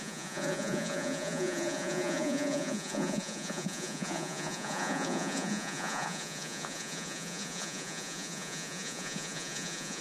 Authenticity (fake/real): fake